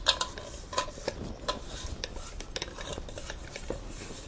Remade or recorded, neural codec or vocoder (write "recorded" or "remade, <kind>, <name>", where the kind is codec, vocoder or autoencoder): recorded